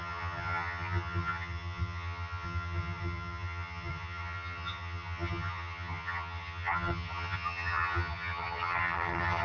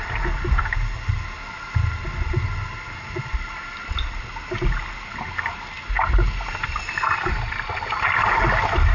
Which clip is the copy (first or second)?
first